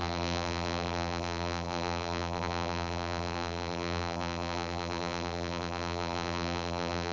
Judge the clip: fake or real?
fake